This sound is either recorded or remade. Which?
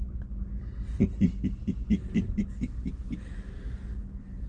recorded